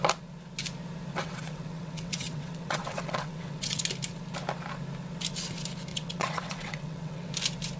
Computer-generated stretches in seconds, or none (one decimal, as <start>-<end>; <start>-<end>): 1.1-3.8; 5.9-7.3